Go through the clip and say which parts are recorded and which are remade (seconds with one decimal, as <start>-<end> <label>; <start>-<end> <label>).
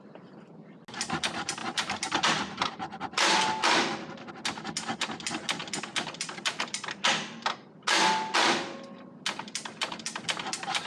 0.0-1.6 recorded; 1.6-4.3 remade; 4.3-10.9 recorded